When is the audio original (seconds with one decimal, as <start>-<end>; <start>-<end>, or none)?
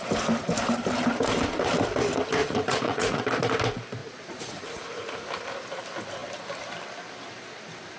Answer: 0.0-2.4; 3.2-4.0; 5.1-8.0